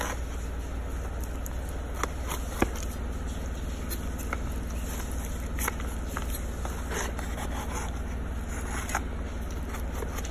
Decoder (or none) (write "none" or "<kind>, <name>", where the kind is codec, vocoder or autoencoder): none